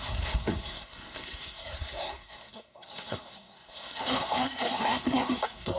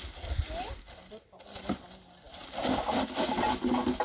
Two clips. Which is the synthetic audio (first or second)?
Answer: first